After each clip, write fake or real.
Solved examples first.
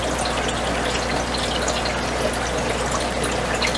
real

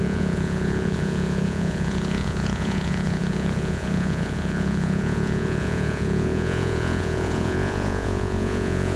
fake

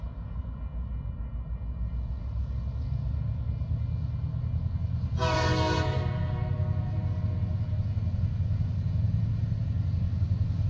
real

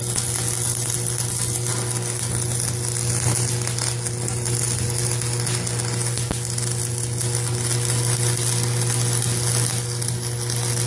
real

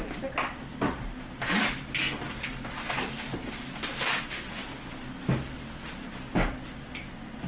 real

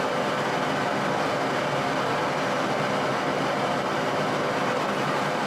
real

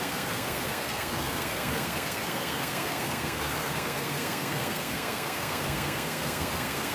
fake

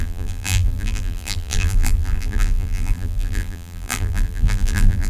fake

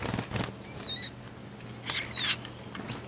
real